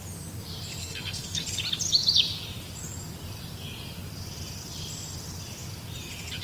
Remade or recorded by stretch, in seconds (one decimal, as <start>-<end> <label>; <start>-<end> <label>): 0.0-0.8 recorded; 0.8-1.4 remade; 1.4-6.4 recorded